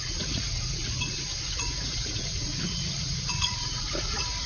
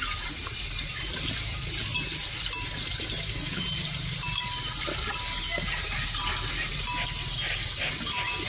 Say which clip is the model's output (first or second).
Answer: first